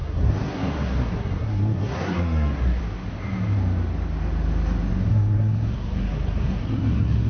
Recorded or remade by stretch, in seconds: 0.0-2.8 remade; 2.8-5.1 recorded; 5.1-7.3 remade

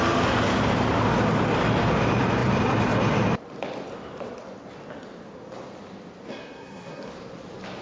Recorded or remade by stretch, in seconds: 0.0-6.3 recorded; 6.3-7.1 remade; 7.1-7.8 recorded